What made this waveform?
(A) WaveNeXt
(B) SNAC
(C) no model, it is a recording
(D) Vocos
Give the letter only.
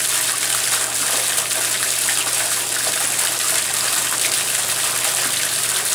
C